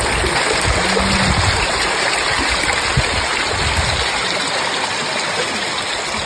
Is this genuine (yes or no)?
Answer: yes